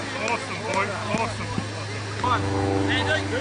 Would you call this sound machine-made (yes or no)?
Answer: no